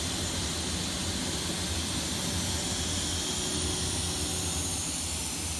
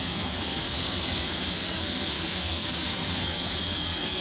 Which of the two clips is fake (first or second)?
second